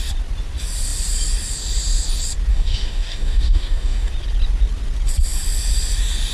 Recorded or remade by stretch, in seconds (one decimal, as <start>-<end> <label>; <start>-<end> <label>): 0.0-2.5 recorded; 2.5-4.1 remade; 4.1-6.3 recorded